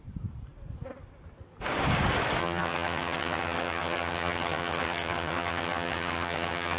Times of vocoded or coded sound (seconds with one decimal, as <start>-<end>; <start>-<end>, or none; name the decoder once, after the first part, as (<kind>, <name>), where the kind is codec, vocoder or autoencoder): 2.4-6.8 (vocoder, HiFi-GAN)

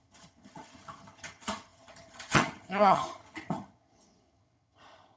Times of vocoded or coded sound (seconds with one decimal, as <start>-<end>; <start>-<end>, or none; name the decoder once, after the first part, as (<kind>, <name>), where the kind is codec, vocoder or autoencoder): 0.0-5.2 (vocoder, HiFi-GAN)

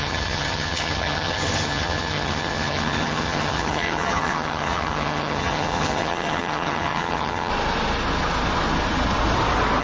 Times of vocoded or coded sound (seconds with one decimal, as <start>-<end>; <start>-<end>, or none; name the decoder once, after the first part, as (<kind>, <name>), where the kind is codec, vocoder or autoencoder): 0.0-7.5 (vocoder, HiFi-GAN)